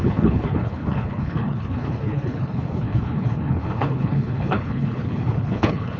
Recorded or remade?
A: remade